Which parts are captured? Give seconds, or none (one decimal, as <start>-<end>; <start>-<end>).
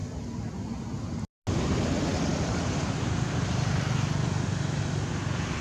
0.0-5.6